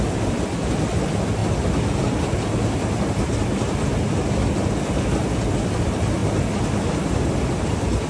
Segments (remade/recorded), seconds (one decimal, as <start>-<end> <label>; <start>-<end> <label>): 0.0-8.1 recorded